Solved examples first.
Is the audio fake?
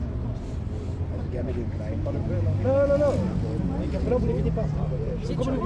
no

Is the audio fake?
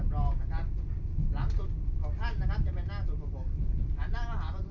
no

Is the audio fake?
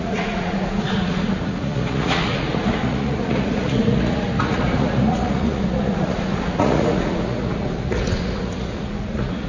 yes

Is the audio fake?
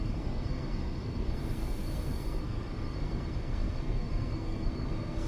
yes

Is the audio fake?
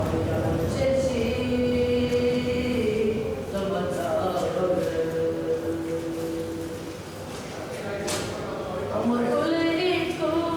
no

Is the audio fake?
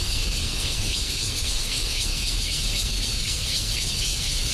yes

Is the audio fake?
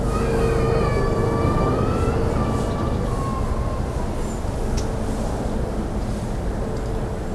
no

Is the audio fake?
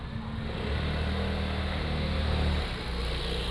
no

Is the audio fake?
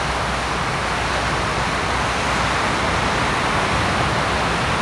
no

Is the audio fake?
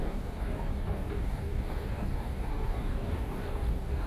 yes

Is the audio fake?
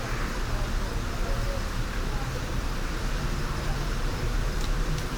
no